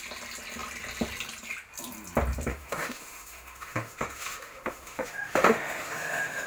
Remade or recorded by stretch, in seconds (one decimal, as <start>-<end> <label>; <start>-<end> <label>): 0.0-2.5 recorded; 2.5-6.5 remade